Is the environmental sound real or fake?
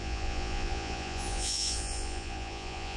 fake